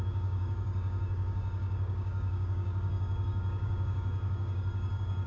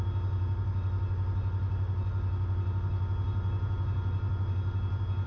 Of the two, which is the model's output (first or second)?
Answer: first